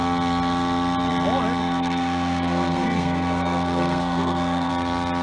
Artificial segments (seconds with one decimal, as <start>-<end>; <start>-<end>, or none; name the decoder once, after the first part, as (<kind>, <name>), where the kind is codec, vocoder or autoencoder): 1.6-4.7 (codec, SNAC)